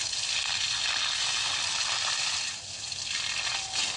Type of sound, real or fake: real